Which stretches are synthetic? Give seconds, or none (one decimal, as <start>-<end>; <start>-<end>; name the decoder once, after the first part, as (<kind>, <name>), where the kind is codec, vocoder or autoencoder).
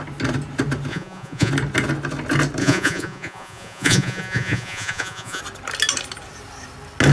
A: 0.9-1.5 (vocoder, Vocos); 2.6-5.4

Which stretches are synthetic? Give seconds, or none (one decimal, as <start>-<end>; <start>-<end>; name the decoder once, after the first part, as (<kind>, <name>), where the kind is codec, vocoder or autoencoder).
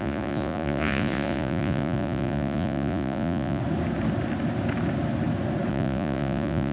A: 0.0-3.6 (vocoder, Vocos); 5.7-6.7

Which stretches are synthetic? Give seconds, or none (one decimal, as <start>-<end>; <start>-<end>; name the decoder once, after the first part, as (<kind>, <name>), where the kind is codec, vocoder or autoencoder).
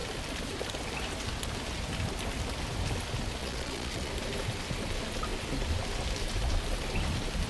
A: 3.4-4.1 (vocoder, Vocos)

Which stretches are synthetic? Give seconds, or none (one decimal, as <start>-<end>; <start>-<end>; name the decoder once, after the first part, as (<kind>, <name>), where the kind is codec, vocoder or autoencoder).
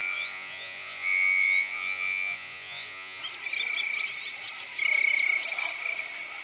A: 0.0-3.2 (vocoder, Vocos)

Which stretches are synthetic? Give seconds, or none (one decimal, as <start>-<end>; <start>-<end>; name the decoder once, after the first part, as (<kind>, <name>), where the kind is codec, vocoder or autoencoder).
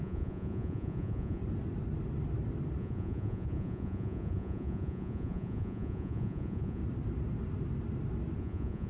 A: 0.0-1.4 (vocoder, Vocos); 2.8-6.8; 8.4-8.9